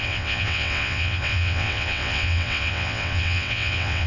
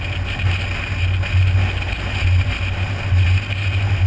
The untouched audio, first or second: second